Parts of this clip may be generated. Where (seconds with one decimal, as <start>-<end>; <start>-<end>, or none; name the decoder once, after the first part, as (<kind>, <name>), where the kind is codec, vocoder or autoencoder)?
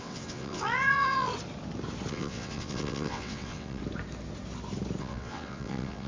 0.0-1.3 (vocoder, WaveNeXt); 2.1-3.8; 5.0-6.1